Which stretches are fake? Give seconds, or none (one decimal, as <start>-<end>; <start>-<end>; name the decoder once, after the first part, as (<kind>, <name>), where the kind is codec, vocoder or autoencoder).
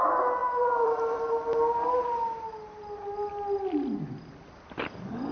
0.4-1.3 (vocoder, BigVGAN v2)